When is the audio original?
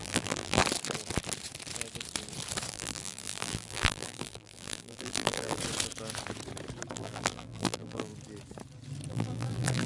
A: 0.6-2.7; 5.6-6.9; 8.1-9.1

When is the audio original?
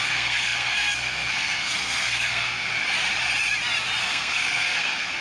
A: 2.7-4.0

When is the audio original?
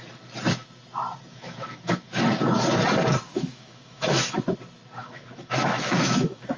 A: 0.0-1.3; 2.2-3.3; 4.4-5.0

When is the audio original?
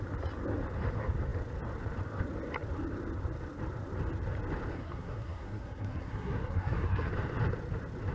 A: 0.0-4.7; 7.1-8.1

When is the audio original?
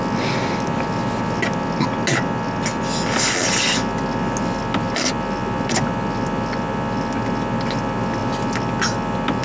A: 0.0-9.4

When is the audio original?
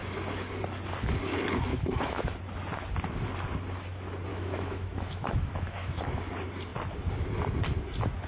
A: 0.0-1.7; 2.4-4.3; 6.0-8.3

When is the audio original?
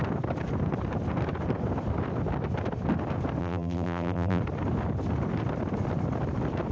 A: 0.0-3.4; 4.4-6.7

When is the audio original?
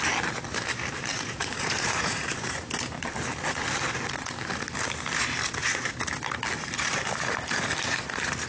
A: 0.0-1.1; 2.6-8.5